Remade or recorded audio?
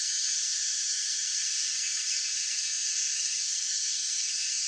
remade